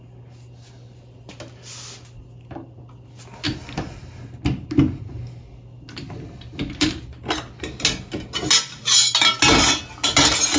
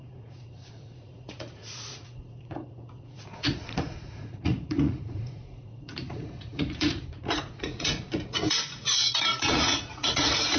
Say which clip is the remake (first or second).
second